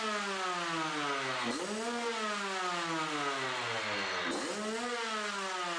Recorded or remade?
recorded